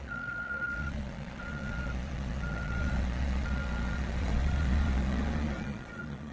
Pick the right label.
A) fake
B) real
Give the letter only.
A